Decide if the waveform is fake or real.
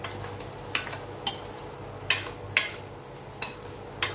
real